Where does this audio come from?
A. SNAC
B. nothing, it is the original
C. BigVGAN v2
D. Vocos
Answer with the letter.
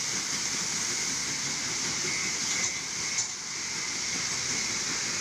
B